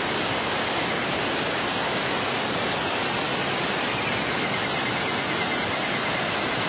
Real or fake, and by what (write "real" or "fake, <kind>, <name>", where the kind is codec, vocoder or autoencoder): real